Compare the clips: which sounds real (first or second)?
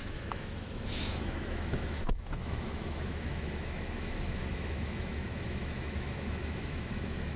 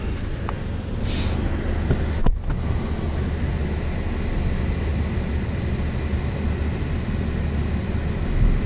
second